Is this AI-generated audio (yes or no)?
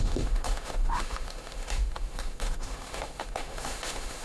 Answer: yes